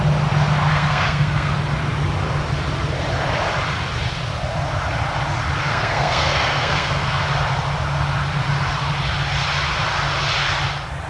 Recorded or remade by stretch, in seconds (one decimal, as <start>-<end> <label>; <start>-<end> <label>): 0.0-0.7 recorded; 0.7-1.5 remade; 1.5-5.7 recorded; 5.7-7.2 remade; 7.2-11.1 recorded